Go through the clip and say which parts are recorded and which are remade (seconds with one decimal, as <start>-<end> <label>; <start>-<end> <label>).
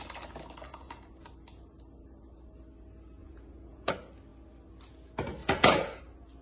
0.0-0.7 recorded; 0.7-1.3 remade; 1.3-3.2 recorded; 3.2-3.9 remade; 3.9-5.4 recorded; 5.4-6.0 remade; 6.0-6.4 recorded